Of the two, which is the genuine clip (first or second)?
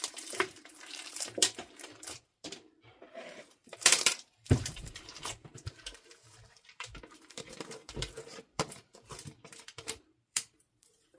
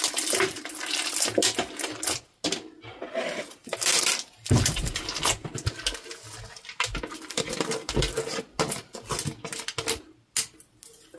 second